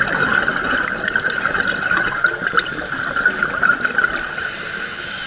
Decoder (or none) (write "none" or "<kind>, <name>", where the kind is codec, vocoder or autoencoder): none